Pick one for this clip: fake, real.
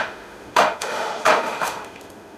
fake